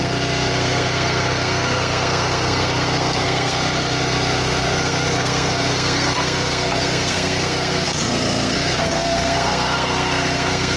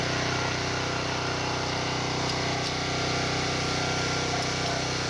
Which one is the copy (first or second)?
first